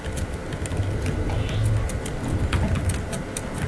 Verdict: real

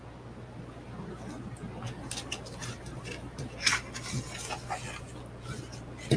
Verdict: real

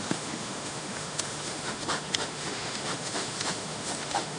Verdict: fake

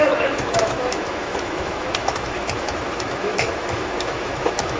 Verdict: fake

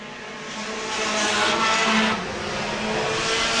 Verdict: real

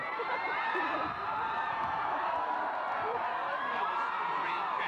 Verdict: fake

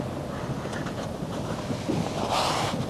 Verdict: real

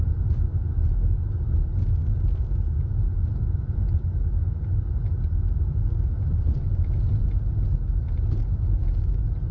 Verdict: real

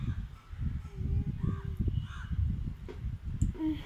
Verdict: real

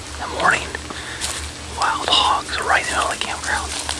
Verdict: real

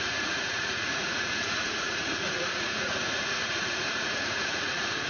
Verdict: fake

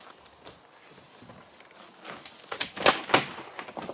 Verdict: real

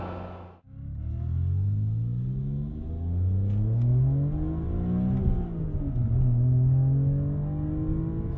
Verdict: real